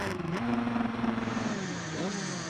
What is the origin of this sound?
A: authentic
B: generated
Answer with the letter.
B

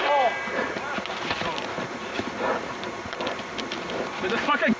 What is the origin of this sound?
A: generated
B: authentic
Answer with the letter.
A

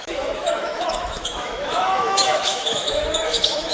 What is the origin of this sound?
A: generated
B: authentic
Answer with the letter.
A